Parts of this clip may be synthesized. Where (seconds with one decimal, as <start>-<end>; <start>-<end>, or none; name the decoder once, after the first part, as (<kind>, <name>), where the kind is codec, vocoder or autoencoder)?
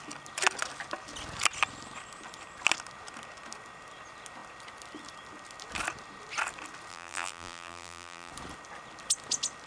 6.9-8.3 (vocoder, BigVGAN v2)